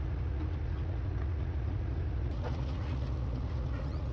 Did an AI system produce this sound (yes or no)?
yes